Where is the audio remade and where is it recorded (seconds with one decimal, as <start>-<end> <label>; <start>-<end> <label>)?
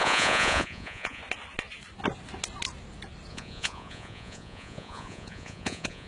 0.0-1.2 remade; 1.2-3.3 recorded; 3.3-6.1 remade